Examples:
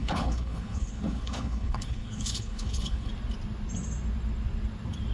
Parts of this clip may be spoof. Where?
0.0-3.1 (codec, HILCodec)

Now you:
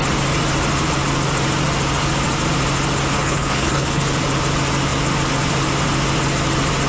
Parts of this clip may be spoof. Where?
3.1-4.0 (codec, HILCodec)

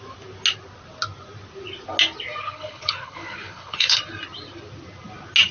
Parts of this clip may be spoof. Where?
2.4-4.0 (codec, HILCodec)

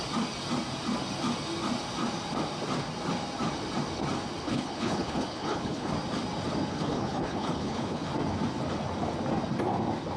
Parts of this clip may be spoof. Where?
4.4-5.9 (codec, HILCodec); 6.7-8.1

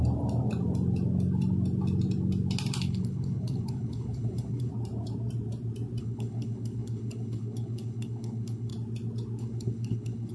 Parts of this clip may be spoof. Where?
2.8-4.7 (codec, HILCodec); 6.0-8.7; 9.4-10.3

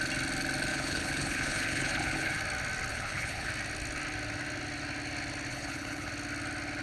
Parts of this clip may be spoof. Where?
0.7-2.4 (codec, HILCodec); 2.9-3.5; 5.5-6.1